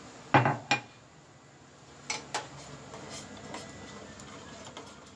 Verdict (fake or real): real